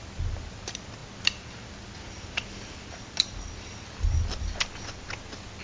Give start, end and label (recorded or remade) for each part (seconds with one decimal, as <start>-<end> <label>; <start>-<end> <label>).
0.0-5.6 recorded